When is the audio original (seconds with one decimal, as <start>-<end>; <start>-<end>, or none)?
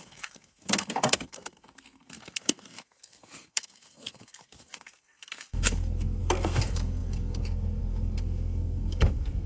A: none